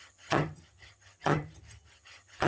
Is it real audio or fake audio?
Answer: fake